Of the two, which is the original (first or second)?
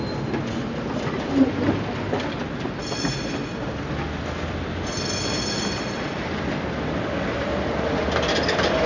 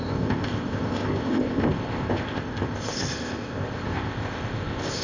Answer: first